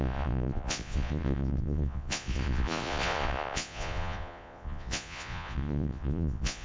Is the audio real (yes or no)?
no